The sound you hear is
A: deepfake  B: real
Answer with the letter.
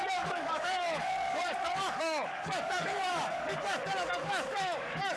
A